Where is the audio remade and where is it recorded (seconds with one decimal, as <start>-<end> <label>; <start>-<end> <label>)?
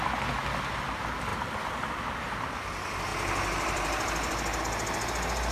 0.0-3.1 recorded; 3.1-4.6 remade; 4.6-5.5 recorded